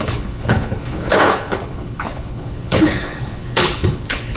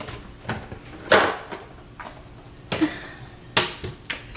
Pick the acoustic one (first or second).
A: second